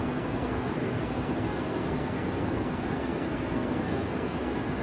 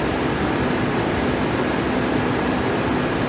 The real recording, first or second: second